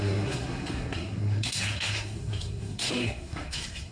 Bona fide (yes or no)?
no